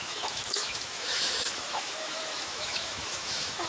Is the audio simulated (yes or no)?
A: yes